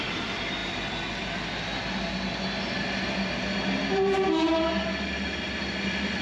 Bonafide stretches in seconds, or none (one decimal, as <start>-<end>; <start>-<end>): 0.0-6.2